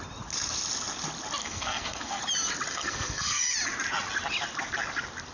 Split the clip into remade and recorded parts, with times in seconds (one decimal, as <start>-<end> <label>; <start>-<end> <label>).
0.0-1.4 recorded; 1.4-2.2 remade; 2.2-2.7 recorded; 2.7-3.4 remade; 3.4-5.3 recorded